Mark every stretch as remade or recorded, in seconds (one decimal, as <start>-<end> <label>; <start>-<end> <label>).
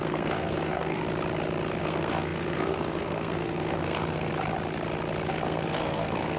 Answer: 0.0-1.0 remade; 1.0-1.8 recorded; 1.8-4.3 remade; 4.3-5.3 recorded; 5.3-6.4 remade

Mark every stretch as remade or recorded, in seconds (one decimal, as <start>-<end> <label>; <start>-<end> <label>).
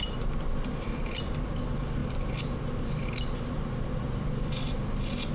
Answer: 0.0-5.3 recorded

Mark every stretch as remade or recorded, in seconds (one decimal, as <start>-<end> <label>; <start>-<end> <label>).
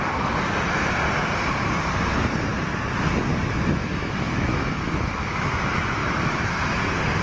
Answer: 0.0-3.8 recorded; 3.8-5.5 remade; 5.5-6.0 recorded; 6.0-6.8 remade; 6.8-7.2 recorded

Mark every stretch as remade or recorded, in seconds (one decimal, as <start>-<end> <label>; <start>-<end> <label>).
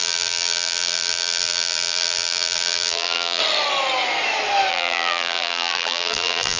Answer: 0.0-3.4 remade; 3.4-4.7 recorded; 4.7-6.6 remade